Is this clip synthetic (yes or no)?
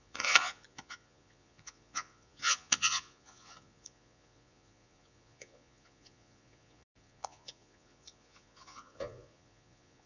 yes